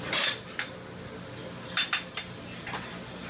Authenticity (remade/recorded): recorded